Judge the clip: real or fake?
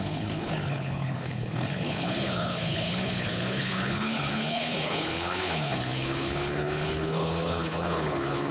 fake